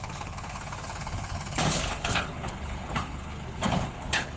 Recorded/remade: remade